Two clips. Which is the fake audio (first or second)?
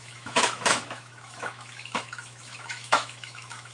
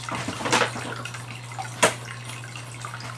first